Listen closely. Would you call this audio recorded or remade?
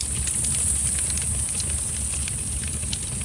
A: recorded